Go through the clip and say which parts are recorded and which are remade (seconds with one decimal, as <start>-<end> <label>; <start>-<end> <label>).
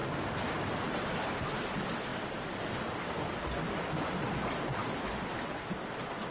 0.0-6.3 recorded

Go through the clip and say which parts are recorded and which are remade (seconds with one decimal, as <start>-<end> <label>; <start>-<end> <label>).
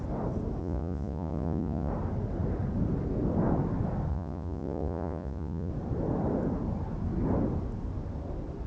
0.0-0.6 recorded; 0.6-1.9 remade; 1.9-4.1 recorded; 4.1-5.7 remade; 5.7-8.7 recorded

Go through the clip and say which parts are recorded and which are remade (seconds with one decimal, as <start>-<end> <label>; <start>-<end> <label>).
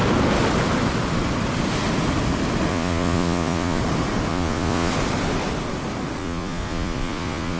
0.0-2.7 recorded; 2.7-3.8 remade; 3.8-4.3 recorded; 4.3-4.9 remade; 4.9-6.2 recorded; 6.2-7.6 remade